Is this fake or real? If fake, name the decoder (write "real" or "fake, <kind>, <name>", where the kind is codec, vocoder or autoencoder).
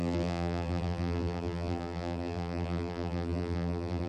fake, vocoder, BigVGAN v2